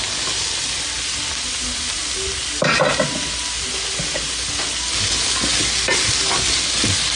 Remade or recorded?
recorded